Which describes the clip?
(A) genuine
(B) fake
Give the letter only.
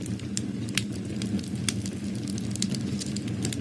A